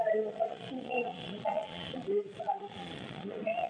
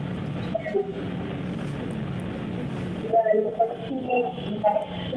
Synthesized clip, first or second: first